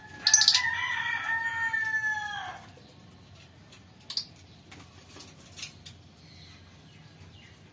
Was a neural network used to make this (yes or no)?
no